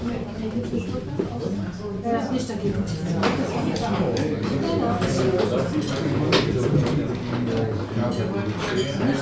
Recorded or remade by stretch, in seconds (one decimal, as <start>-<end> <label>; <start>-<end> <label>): 0.0-9.2 recorded